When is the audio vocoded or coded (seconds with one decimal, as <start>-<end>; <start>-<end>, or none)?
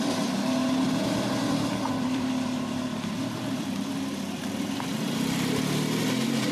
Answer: 0.0-0.6; 1.9-4.9; 6.0-6.5